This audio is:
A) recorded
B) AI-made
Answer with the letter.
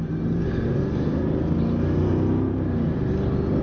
A